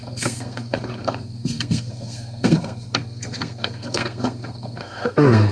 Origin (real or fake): fake